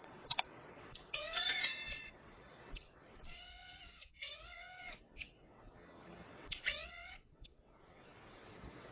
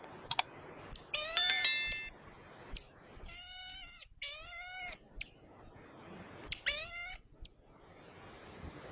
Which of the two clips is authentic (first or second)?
second